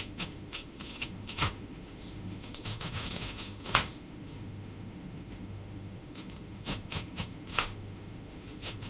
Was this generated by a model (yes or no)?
yes